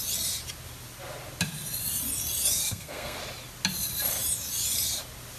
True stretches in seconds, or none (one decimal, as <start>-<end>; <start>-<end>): 0.0-2.7; 3.2-5.4

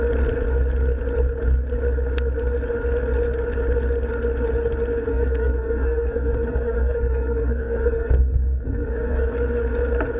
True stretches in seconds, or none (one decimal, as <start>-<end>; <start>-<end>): 0.0-5.1; 9.3-10.2